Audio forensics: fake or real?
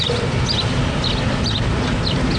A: real